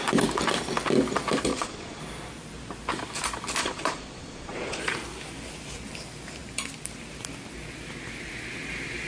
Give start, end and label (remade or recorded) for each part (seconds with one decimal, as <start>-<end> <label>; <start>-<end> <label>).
0.0-1.5 recorded; 1.5-2.0 remade; 2.0-3.6 recorded; 3.6-4.8 remade; 4.8-9.1 recorded

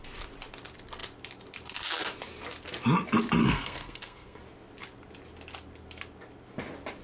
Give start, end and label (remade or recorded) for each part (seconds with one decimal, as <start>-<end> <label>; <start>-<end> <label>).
0.0-3.4 recorded; 3.4-4.4 remade; 4.4-7.0 recorded

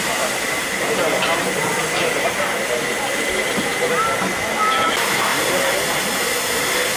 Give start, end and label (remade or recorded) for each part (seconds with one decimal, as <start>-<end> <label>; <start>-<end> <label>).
0.0-7.0 recorded